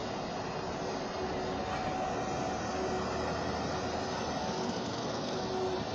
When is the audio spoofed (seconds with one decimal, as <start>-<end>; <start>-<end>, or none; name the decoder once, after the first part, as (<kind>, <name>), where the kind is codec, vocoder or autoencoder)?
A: 4.4-5.5 (codec, SNAC)